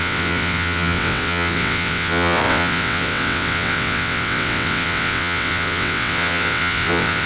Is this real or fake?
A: fake